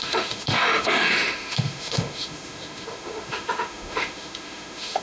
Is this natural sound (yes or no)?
no